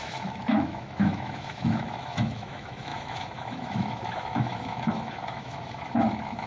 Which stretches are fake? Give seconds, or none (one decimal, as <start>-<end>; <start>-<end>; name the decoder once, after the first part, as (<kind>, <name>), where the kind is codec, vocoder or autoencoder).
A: 0.0-6.5 (autoencoder, DAC-VAE)